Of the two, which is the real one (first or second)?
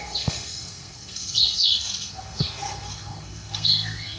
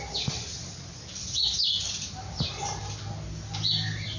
second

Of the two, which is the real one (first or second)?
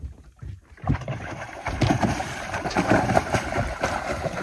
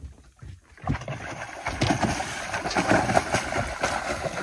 second